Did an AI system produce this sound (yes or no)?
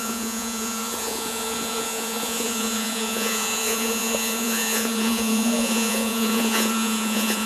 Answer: yes